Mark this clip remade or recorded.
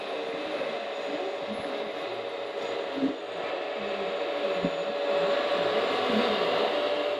recorded